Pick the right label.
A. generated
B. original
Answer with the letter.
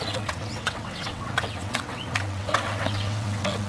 A